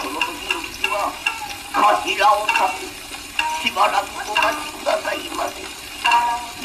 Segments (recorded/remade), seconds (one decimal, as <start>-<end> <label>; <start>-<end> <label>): 0.0-6.6 recorded